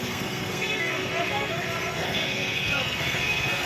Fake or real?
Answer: fake